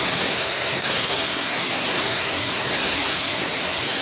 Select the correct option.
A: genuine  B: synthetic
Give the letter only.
B